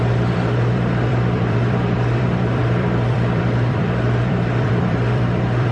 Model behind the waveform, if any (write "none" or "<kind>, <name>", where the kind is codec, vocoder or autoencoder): vocoder, BigVGAN v2